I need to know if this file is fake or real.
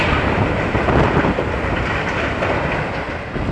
real